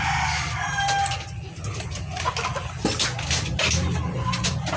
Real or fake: real